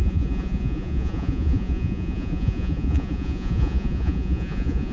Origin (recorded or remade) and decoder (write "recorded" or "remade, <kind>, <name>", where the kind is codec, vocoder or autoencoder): remade, vocoder, Vocos